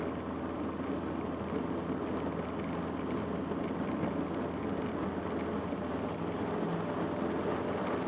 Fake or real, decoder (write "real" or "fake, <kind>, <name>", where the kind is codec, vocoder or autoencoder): real